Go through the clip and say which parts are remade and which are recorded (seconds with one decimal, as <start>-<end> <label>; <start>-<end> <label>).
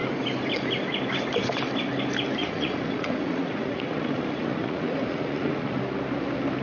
0.0-2.4 recorded; 2.4-5.8 remade; 5.8-6.6 recorded